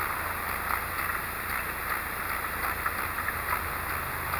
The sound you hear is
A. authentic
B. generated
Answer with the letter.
A